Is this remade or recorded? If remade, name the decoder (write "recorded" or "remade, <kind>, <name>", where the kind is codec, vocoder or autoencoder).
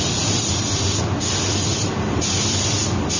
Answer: recorded